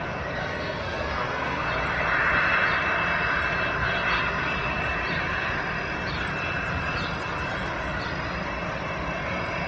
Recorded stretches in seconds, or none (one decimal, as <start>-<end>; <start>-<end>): 0.0-0.4; 1.7-9.7